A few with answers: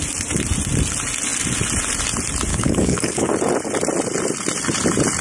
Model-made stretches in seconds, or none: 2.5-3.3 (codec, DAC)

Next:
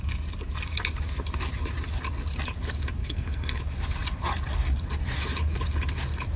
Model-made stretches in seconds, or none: 3.0-3.6 (codec, SNAC)

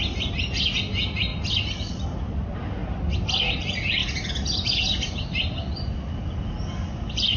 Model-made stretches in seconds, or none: none

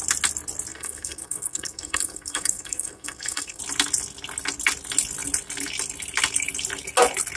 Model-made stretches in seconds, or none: 0.7-3.6 (codec, SNAC)

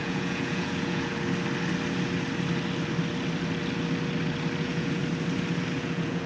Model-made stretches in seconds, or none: 0.0-1.1 (vocoder, Vocos); 4.6-5.0; 5.8-6.3

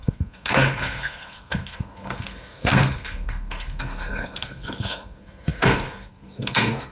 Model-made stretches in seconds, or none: 0.0-6.9 (codec, SNAC)